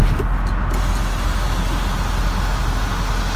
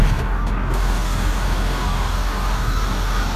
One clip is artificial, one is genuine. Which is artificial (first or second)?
second